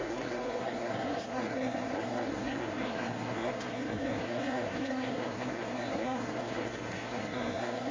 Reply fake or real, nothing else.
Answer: fake